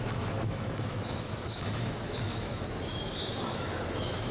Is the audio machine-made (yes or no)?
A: yes